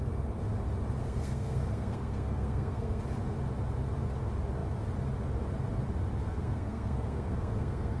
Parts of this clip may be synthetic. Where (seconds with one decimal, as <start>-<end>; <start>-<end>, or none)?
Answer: 1.0-3.0; 6.2-8.0